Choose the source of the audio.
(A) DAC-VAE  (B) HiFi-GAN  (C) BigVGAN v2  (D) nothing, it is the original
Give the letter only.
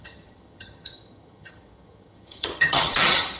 B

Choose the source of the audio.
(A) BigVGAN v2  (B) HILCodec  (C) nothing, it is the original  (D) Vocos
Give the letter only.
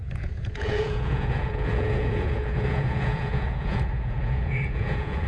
D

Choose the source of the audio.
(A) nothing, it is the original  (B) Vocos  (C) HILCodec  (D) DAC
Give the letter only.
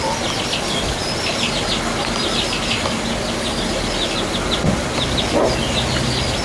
A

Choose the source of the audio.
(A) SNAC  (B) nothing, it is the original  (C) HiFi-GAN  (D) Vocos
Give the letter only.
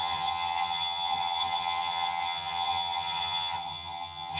C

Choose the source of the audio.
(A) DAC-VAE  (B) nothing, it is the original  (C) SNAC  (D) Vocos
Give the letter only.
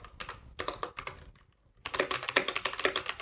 B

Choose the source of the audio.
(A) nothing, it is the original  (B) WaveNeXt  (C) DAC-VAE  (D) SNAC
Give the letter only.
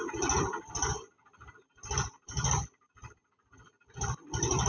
A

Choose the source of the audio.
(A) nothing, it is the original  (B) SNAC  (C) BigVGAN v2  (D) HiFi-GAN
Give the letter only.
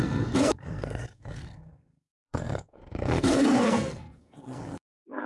B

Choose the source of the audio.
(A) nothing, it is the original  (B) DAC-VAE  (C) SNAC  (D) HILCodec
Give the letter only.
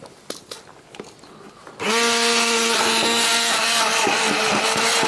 A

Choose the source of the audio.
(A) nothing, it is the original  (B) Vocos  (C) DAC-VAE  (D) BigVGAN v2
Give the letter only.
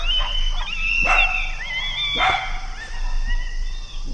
A